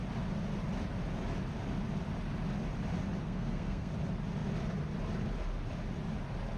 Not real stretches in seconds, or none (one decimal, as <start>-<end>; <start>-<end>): 3.2-3.9